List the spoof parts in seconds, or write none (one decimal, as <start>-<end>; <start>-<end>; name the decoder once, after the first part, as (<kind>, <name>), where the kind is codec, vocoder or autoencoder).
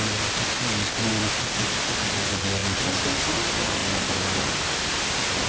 none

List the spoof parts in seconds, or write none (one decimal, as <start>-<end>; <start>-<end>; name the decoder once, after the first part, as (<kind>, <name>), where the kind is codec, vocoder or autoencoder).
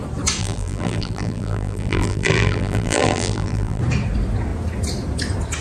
0.4-3.8 (vocoder, BigVGAN v2)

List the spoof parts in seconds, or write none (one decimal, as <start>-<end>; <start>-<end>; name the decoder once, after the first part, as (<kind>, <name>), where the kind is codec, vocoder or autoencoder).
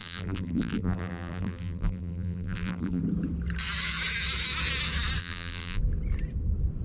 0.0-3.0 (vocoder, BigVGAN v2); 5.2-5.8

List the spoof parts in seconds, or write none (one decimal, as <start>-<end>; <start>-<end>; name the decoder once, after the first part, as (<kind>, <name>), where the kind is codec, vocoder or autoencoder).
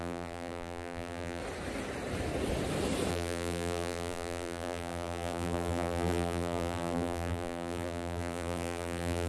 0.0-1.4 (vocoder, BigVGAN v2); 3.1-9.3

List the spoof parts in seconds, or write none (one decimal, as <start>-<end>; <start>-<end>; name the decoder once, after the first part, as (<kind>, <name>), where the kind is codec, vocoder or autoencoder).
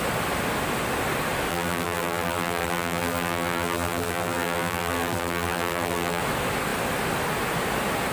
1.5-6.2 (vocoder, BigVGAN v2)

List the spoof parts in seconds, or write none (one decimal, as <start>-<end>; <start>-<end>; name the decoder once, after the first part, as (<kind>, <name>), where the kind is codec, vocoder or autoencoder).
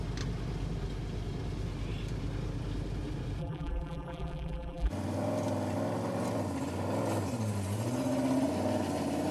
3.4-4.9 (vocoder, BigVGAN v2)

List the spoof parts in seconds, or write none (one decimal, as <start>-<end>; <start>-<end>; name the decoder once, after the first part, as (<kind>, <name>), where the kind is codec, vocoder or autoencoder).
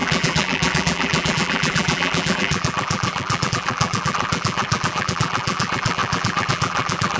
0.0-7.2 (vocoder, BigVGAN v2)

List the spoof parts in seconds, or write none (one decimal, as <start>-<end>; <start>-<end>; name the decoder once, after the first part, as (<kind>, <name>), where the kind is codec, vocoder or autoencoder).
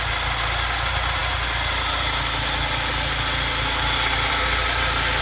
none